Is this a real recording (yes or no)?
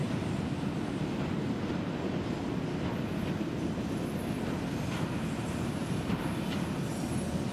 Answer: yes